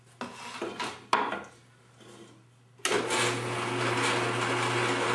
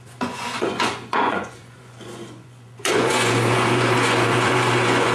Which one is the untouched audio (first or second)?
first